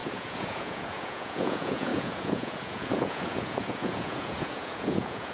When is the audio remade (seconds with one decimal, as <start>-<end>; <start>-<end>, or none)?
0.0-5.3